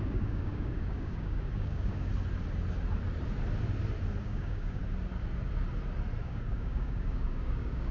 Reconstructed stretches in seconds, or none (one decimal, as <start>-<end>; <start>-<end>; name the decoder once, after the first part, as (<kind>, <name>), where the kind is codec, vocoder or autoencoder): 0.0-2.1 (codec, DAC); 4.2-4.8; 6.2-7.9